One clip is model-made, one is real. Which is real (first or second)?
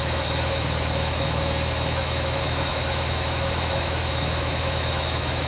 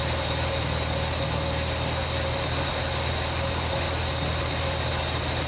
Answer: second